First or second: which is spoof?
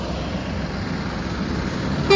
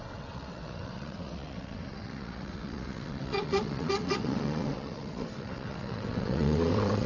second